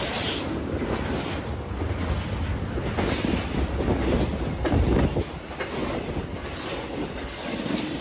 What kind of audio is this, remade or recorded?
recorded